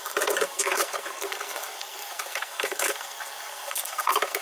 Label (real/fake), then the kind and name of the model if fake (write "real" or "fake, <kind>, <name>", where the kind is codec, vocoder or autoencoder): fake, codec, SNAC